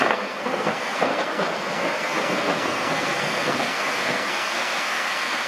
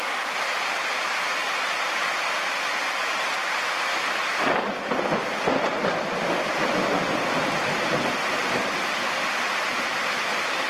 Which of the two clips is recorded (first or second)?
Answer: second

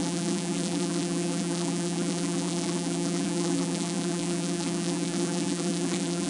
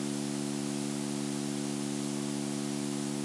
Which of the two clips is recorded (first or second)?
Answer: second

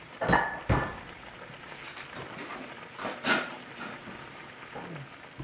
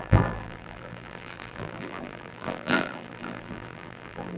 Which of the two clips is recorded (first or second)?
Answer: first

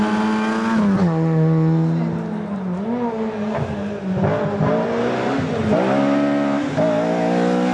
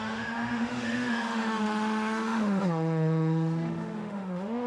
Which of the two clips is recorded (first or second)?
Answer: first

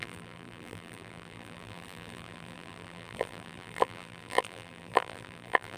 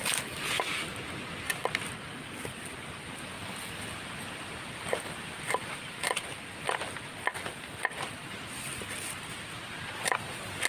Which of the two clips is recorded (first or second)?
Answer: second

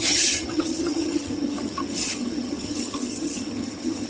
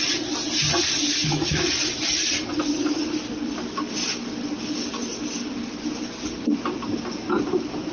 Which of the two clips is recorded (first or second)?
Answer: second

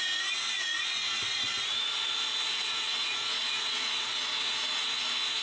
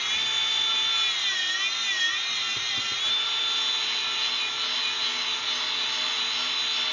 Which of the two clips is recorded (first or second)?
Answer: second